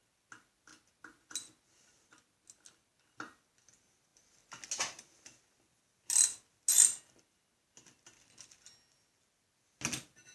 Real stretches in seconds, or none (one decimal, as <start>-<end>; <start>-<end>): 0.0-10.3